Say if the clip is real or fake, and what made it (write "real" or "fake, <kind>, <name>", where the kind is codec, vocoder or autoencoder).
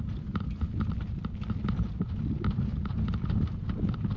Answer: real